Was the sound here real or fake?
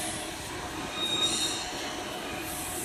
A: real